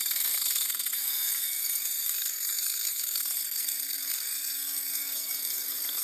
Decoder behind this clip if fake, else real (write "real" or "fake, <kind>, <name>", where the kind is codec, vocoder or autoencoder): fake, codec, SNAC